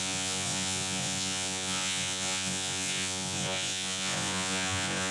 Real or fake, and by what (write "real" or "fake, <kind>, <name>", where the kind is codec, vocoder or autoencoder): fake, vocoder, Vocos